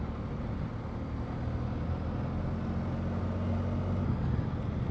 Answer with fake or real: real